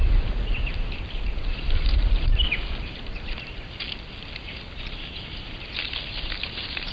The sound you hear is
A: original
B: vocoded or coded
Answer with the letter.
A